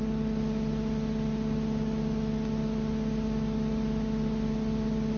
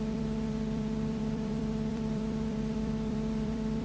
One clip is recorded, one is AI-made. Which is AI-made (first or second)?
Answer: second